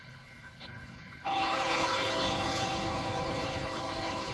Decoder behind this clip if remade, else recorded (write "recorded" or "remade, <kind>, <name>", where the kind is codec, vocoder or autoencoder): remade, codec, HILCodec